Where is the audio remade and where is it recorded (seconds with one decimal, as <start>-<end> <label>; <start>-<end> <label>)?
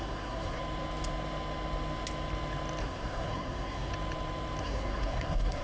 0.0-0.6 remade; 0.6-2.8 recorded; 2.8-3.9 remade; 3.9-4.6 recorded; 4.6-5.6 remade